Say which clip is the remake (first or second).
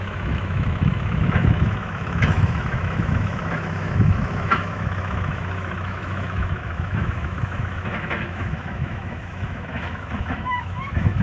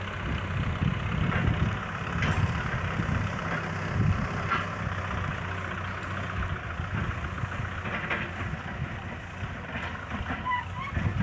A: first